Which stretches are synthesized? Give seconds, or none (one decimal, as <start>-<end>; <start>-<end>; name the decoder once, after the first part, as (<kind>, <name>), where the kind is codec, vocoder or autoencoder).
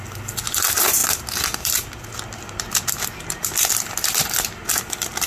none